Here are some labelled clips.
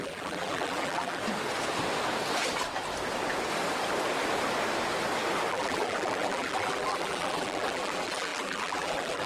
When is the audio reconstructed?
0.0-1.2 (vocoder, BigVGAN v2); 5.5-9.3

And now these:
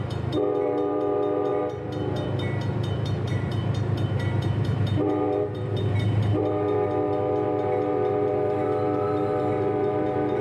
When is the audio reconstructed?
0.0-10.4 (vocoder, BigVGAN v2)

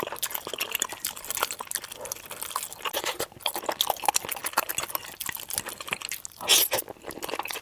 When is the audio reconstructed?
none

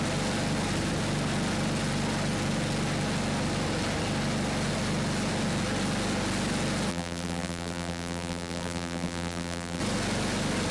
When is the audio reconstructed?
6.9-9.8 (vocoder, BigVGAN v2)

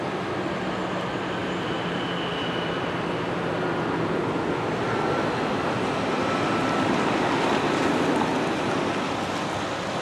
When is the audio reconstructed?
1.4-2.0 (vocoder, BigVGAN v2)

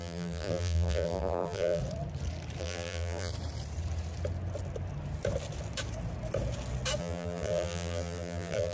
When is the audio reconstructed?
0.0-1.8 (vocoder, BigVGAN v2); 2.6-3.3; 7.0-8.7

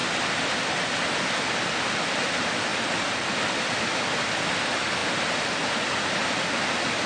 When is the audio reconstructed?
2.7-3.9 (vocoder, BigVGAN v2)

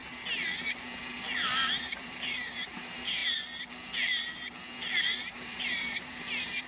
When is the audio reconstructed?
1.8-3.2 (vocoder, BigVGAN v2); 5.0-6.7